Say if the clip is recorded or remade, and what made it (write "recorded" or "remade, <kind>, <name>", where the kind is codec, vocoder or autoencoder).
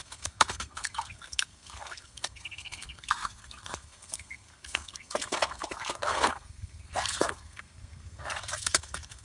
remade, codec, SNAC